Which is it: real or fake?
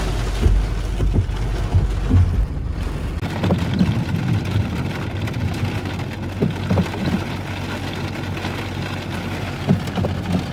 real